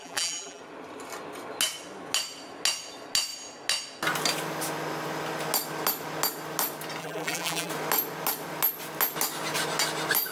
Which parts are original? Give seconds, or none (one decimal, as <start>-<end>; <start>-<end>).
0.6-7.0; 7.7-10.3

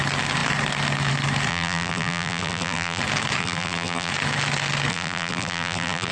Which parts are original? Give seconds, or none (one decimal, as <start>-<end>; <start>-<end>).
0.0-1.5; 3.0-3.4; 4.1-4.9

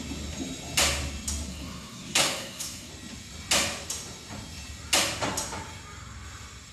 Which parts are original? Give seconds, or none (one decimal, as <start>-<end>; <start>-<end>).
0.0-1.5; 2.9-6.7